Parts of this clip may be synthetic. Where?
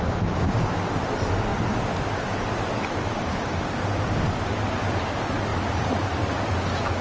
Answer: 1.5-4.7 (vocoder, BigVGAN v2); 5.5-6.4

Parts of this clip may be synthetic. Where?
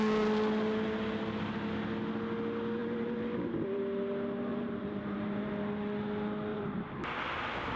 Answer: 2.8-3.8 (vocoder, BigVGAN v2); 4.5-5.5; 6.5-7.2